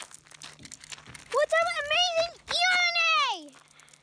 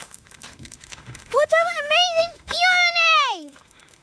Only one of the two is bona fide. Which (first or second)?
first